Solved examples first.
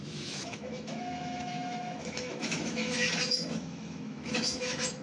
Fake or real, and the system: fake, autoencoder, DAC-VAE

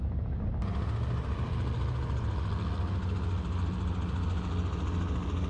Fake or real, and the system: real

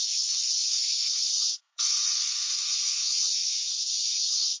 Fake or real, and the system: fake, autoencoder, DAC-VAE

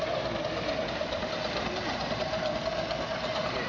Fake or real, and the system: real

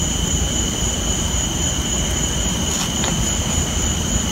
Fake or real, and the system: real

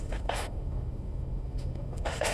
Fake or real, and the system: fake, autoencoder, DAC-VAE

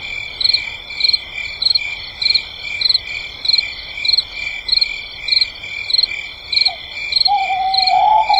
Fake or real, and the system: real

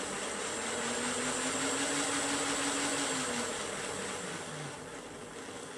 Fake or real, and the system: real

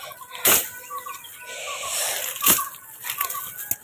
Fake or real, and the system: real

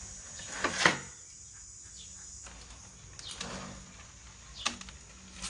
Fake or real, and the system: real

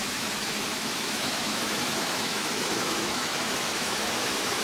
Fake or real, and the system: fake, autoencoder, DAC-VAE